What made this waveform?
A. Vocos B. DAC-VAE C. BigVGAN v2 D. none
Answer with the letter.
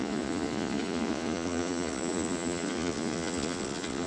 A